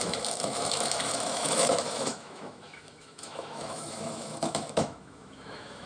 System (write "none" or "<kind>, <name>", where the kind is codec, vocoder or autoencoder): autoencoder, DAC-VAE